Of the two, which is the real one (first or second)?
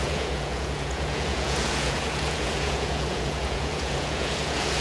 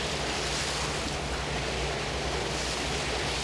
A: second